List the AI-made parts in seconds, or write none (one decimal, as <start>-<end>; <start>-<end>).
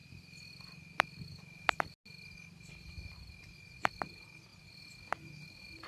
none